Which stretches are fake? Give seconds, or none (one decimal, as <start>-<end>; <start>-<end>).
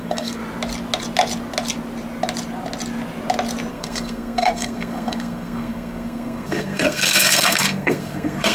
0.0-0.4; 3.7-8.5